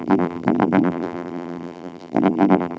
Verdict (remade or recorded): remade